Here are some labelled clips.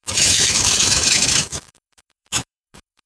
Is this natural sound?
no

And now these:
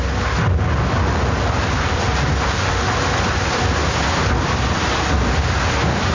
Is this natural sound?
yes